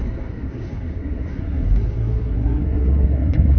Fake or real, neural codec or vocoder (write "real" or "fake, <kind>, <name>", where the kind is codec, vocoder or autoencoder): fake, codec, SNAC